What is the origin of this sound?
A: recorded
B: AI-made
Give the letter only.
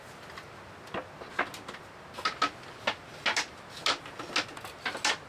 A